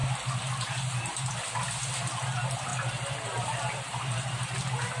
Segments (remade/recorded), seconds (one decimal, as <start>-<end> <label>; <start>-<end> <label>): 0.0-5.0 recorded